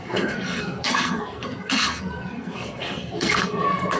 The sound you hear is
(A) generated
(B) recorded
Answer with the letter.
A